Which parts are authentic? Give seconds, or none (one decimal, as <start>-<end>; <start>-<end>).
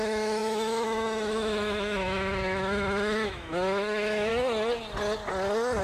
4.3-5.8